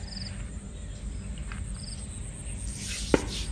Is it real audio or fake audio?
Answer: real